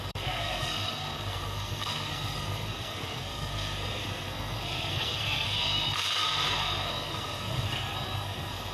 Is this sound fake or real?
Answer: fake